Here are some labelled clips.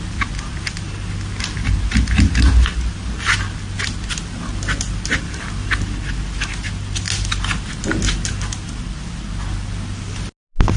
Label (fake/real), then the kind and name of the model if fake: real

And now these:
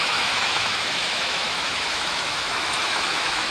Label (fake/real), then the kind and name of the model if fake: fake, autoencoder, DAC-VAE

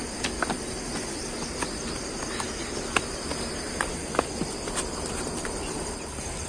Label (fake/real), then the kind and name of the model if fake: real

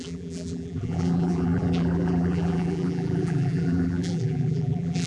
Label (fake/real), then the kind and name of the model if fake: fake, vocoder, BigVGAN v2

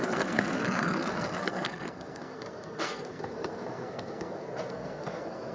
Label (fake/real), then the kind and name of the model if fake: fake, codec, SNAC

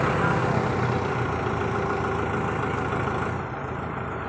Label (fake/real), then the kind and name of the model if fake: real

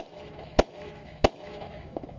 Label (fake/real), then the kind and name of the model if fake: fake, autoencoder, DAC-VAE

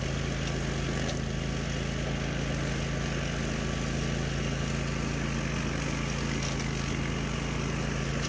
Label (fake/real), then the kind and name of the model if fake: real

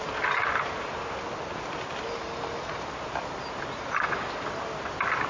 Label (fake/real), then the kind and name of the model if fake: real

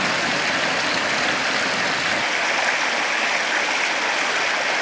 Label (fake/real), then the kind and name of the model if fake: real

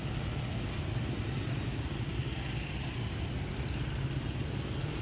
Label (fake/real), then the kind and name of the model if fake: real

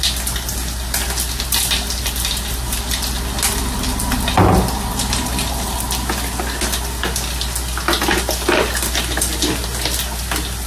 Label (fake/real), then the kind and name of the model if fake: real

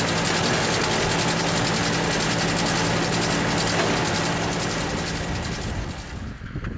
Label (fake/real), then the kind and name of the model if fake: real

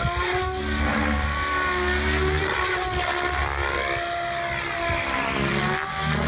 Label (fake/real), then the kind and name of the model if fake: real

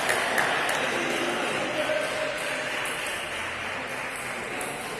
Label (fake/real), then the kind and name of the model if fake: fake, vocoder, BigVGAN v2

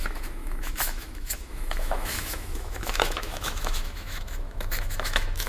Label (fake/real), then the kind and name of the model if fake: fake, autoencoder, DAC-VAE